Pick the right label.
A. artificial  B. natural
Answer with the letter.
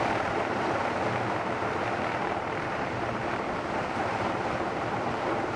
A